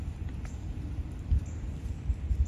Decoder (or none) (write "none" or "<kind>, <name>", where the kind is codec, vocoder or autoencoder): vocoder, BigVGAN v2